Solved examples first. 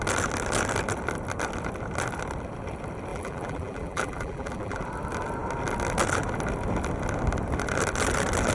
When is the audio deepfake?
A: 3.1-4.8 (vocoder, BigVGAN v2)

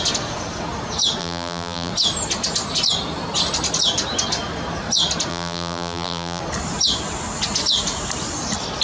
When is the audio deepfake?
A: 1.2-1.9 (vocoder, BigVGAN v2); 5.3-6.4

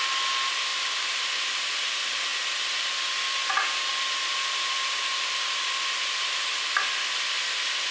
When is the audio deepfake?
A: 0.7-1.6 (vocoder, BigVGAN v2); 2.3-3.4; 3.9-6.5

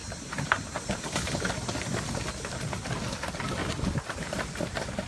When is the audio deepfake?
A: 3.6-4.5 (vocoder, BigVGAN v2)

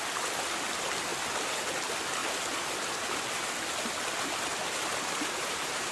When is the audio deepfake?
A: 4.5-5.9 (vocoder, BigVGAN v2)

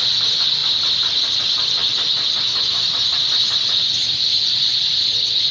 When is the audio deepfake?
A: 0.6-1.4 (vocoder, BigVGAN v2)